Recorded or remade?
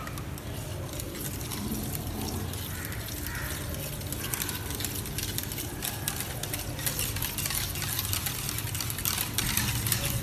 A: recorded